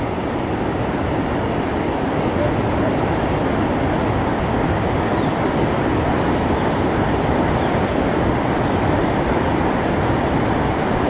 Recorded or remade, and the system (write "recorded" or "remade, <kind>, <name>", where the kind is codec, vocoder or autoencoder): recorded